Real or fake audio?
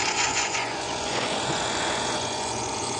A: fake